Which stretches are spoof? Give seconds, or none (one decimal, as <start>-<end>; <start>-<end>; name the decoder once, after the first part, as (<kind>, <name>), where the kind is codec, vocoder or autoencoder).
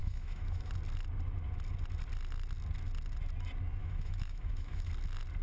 0.0-0.7 (autoencoder, DAC-VAE); 3.8-4.9